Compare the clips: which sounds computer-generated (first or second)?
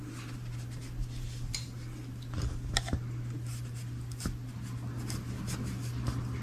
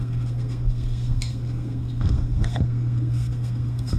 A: second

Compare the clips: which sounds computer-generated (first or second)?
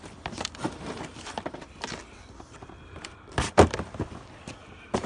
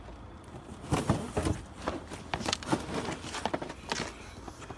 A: first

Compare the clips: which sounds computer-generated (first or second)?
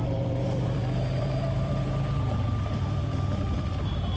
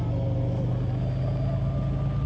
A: first